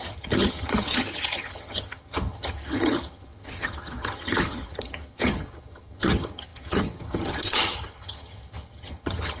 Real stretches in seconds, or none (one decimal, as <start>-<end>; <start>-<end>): none